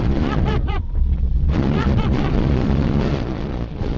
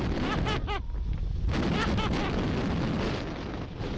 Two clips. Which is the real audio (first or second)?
second